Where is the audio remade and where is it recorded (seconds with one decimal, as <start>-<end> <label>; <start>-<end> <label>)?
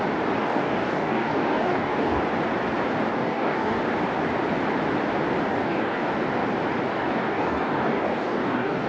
0.0-0.4 recorded; 0.4-2.2 remade; 2.2-3.1 recorded; 3.1-3.8 remade; 3.8-5.5 recorded; 5.5-6.1 remade; 6.1-6.9 recorded; 6.9-8.9 remade